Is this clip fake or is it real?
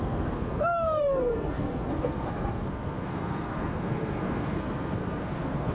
fake